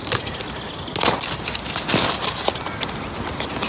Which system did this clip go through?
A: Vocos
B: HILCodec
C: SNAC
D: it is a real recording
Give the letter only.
D